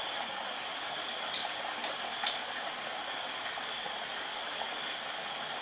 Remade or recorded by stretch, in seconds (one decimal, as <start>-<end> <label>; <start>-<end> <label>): 0.0-1.4 recorded; 1.4-4.8 remade; 4.8-5.6 recorded